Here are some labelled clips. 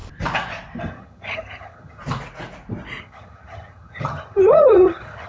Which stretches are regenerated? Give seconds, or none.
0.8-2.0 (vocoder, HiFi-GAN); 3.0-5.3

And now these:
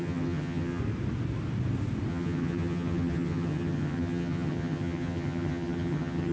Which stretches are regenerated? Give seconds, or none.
0.0-0.8 (vocoder, HiFi-GAN); 2.1-6.3

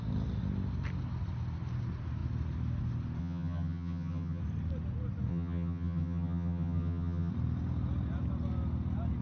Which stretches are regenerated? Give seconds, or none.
3.2-4.4 (vocoder, HiFi-GAN); 5.3-7.3

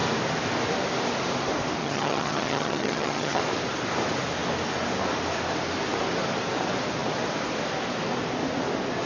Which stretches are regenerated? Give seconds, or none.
1.8-3.4 (vocoder, HiFi-GAN)

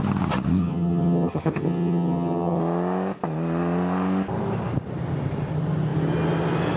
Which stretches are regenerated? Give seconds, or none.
0.6-2.6 (vocoder, HiFi-GAN)